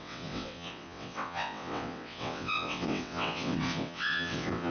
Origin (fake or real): fake